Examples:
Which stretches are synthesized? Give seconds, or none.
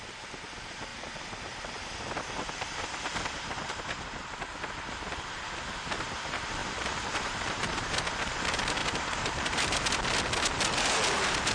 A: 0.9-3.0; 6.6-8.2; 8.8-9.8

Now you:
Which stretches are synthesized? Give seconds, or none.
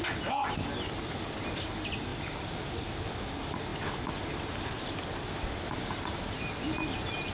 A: 2.1-2.7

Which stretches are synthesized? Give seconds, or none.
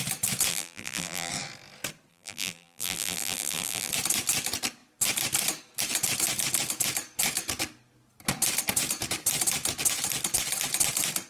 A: 0.5-1.3; 2.1-3.9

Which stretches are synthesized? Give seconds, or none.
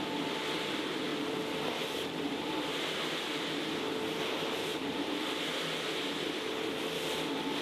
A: 1.1-2.7; 4.7-5.2